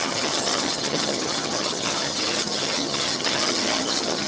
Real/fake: fake